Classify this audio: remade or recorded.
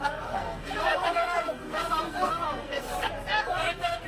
remade